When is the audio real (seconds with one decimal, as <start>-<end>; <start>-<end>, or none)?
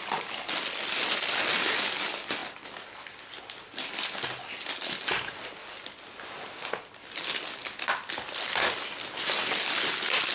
0.0-10.3